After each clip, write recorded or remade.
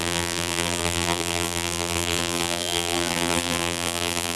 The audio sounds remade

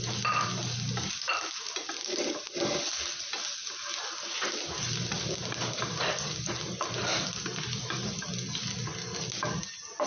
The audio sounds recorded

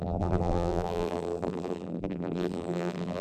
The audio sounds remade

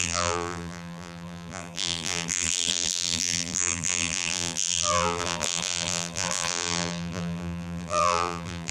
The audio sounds remade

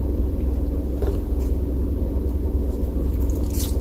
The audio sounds recorded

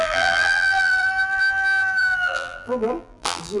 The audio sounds remade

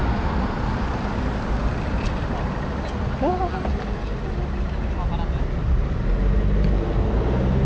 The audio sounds recorded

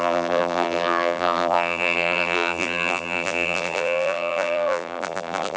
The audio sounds remade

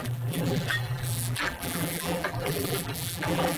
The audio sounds remade